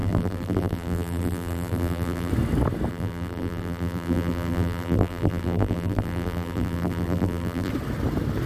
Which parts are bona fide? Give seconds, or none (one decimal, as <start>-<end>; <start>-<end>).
2.3-2.9; 7.7-8.5